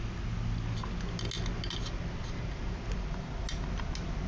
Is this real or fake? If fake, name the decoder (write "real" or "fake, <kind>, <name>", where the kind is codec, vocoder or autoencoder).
real